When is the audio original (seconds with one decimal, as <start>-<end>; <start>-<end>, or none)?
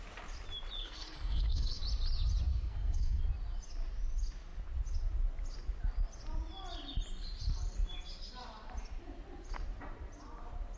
0.0-0.8; 1.8-2.5; 3.2-10.8